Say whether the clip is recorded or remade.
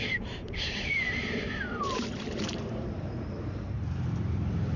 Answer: remade